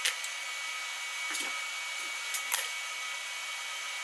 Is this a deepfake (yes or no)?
no